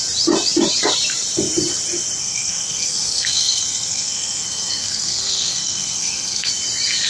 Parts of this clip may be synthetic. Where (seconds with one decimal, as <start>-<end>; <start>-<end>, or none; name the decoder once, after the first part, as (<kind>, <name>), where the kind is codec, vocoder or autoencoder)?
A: 2.2-6.5 (codec, SNAC)